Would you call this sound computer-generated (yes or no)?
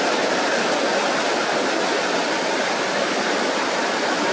no